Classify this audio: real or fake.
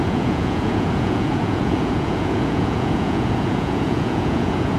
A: fake